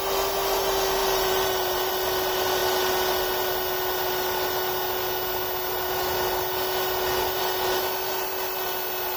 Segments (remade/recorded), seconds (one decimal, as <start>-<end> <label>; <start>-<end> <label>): 0.0-1.0 recorded; 1.0-1.9 remade; 1.9-9.2 recorded